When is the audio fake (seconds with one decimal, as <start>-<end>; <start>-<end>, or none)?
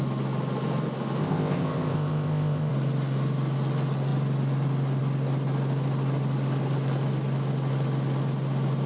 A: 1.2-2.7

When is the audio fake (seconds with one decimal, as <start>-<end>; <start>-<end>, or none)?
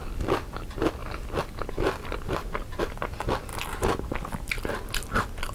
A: none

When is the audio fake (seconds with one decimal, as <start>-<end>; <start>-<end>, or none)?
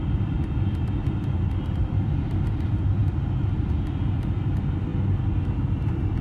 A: 1.0-2.4